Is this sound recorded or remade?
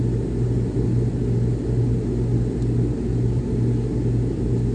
recorded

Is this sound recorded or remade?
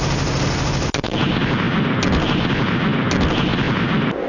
recorded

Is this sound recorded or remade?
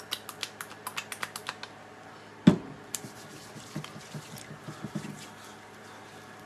recorded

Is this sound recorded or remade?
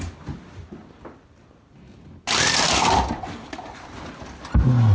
recorded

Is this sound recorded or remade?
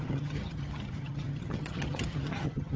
remade